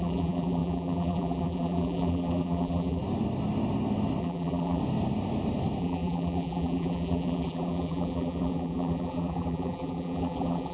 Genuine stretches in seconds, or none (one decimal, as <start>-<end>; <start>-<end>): 3.0-4.2; 4.8-5.8